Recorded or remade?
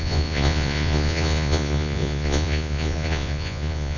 remade